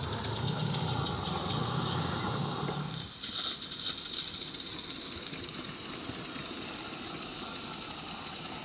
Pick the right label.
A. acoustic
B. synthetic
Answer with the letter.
A